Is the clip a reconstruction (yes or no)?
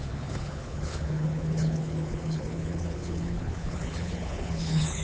yes